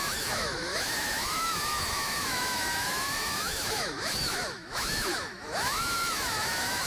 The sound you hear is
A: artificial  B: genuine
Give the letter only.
A